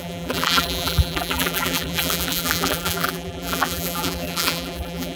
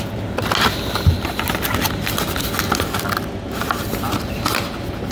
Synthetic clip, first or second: first